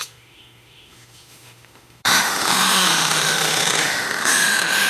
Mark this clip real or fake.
fake